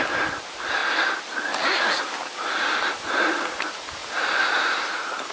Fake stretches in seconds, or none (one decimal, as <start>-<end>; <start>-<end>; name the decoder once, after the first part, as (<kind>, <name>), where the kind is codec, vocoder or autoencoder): none